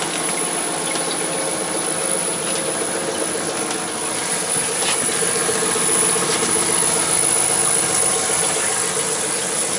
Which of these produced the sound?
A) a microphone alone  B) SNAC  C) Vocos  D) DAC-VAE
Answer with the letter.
A